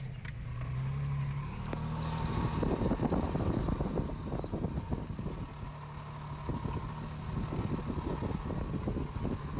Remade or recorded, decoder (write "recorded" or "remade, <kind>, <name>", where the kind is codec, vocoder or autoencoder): recorded